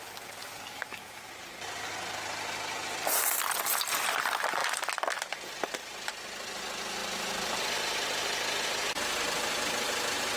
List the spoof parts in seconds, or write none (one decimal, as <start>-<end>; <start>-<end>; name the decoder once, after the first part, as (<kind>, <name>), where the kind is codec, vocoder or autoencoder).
0.0-1.3 (codec, DAC)